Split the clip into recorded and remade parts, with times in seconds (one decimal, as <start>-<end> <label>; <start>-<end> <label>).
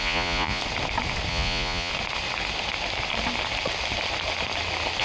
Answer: 0.0-0.6 remade; 0.6-1.3 recorded; 1.3-1.9 remade; 1.9-5.0 recorded